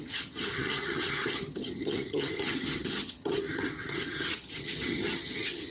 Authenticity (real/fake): fake